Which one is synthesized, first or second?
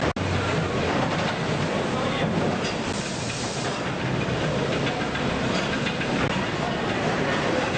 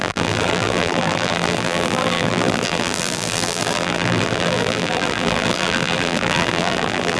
second